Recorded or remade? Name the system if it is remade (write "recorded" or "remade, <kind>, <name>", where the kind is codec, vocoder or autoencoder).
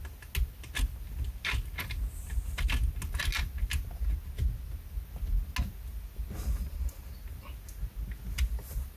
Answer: recorded